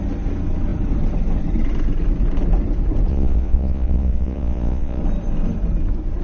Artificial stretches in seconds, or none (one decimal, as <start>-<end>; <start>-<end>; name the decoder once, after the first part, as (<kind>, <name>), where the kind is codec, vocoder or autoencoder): 3.1-5.0 (vocoder, Vocos)